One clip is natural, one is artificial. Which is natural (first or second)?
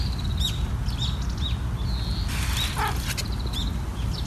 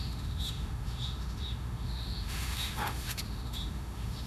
first